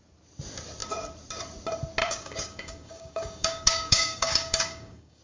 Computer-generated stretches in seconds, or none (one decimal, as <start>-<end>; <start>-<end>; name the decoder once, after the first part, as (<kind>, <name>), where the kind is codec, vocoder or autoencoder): 2.0-5.2 (codec, DAC)